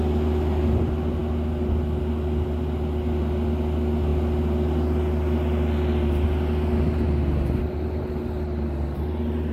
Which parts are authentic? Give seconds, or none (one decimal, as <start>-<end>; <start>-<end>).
0.0-9.5